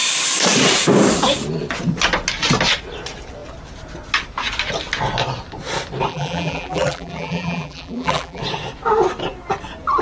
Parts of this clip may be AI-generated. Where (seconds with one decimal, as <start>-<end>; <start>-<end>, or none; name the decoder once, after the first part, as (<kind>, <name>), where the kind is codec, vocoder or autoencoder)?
6.1-8.4 (vocoder, BigVGAN v2)